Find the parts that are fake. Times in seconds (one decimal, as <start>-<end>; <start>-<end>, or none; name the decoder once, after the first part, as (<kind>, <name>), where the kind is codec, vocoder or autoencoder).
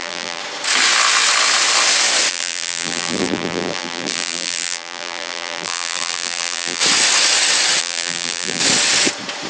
0.0-0.4 (vocoder, BigVGAN v2); 2.3-6.8; 7.8-8.6